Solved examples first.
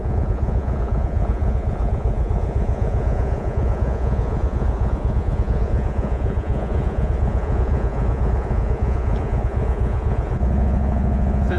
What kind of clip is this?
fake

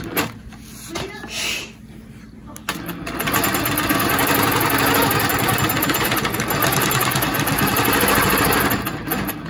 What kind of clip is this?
real